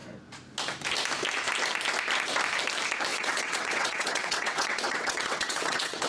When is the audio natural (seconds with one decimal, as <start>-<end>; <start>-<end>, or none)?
0.0-3.1